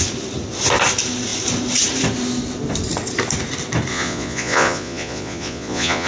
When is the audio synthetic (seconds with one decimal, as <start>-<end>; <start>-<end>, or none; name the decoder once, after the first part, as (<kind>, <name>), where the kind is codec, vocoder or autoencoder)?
3.9-6.1 (vocoder, Vocos)